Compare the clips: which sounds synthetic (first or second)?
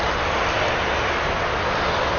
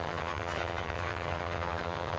second